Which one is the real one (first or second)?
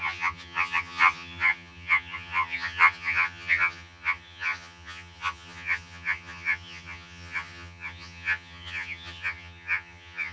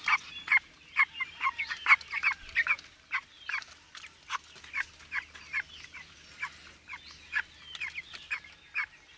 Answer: second